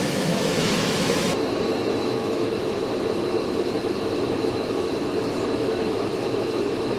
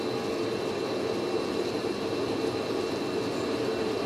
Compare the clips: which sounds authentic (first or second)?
second